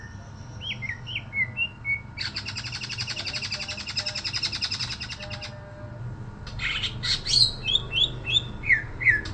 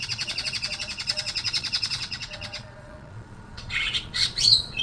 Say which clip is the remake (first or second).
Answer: second